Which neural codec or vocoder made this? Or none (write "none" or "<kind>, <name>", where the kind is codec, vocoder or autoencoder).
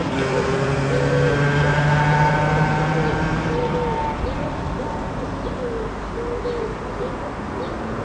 none